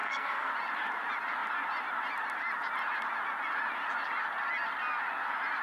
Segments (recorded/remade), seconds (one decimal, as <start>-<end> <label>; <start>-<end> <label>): 0.0-0.5 remade; 0.5-5.6 recorded